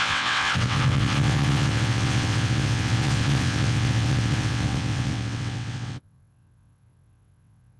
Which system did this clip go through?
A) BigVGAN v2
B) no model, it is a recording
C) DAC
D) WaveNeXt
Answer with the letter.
D